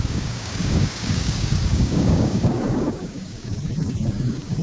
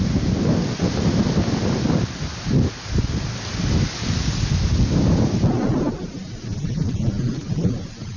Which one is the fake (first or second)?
first